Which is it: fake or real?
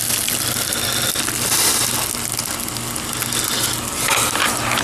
real